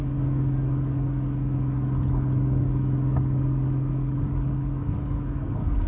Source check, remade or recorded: remade